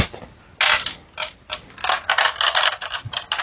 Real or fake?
real